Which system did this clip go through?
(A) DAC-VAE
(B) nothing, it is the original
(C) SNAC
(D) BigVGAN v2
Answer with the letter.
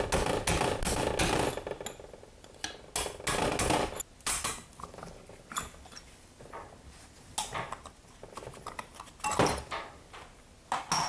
B